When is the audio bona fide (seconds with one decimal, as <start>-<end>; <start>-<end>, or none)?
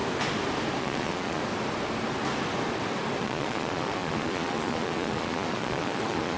0.0-0.8; 1.4-3.2